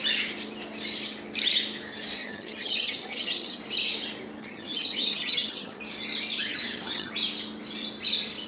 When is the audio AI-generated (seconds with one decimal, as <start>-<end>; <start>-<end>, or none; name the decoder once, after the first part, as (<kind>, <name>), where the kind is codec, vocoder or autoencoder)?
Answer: 2.2-3.6 (vocoder, HiFi-GAN); 4.4-5.8; 6.5-7.1

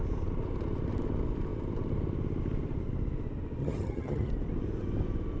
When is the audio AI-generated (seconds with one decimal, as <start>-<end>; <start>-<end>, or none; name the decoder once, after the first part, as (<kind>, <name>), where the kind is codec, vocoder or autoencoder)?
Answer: 3.6-4.3 (vocoder, HiFi-GAN)

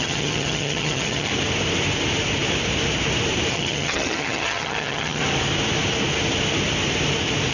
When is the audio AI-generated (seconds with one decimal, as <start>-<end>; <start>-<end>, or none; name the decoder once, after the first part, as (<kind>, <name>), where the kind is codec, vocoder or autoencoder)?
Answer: 0.0-1.3 (vocoder, HiFi-GAN); 3.5-5.2

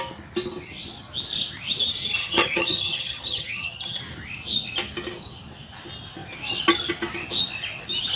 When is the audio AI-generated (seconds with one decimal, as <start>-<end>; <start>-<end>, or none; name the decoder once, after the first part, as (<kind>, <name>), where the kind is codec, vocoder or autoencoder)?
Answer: 2.2-4.0 (vocoder, HiFi-GAN)

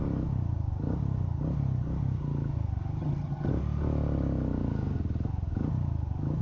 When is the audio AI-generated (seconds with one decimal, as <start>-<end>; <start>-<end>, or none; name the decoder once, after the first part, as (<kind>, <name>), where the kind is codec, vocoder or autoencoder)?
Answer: 3.0-3.5 (vocoder, HiFi-GAN)

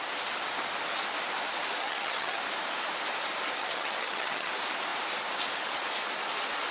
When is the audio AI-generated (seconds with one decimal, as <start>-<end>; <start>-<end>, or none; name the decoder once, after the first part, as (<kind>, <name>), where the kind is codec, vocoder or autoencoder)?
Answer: 1.8-2.4 (vocoder, HiFi-GAN); 3.6-4.5

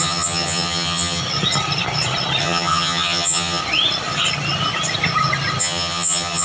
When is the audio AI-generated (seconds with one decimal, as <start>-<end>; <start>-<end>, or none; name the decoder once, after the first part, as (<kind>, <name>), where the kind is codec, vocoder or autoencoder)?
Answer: 0.0-1.2 (vocoder, HiFi-GAN); 2.4-3.6; 5.6-6.4